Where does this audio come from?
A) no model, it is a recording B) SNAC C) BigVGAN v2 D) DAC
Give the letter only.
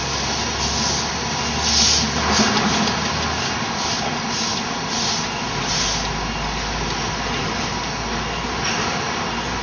A